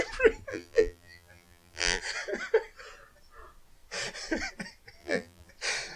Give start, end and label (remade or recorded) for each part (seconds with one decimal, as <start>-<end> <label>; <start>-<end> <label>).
0.0-0.5 recorded; 0.5-2.0 remade; 2.0-5.0 recorded; 5.0-5.5 remade; 5.5-6.0 recorded